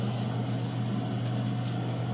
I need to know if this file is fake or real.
real